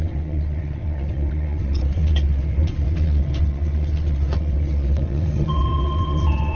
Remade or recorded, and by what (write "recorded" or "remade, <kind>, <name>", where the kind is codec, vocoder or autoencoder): remade, vocoder, WaveNeXt